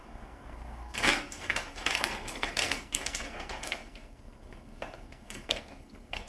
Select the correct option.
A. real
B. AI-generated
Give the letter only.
B